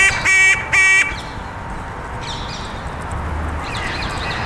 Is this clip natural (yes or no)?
yes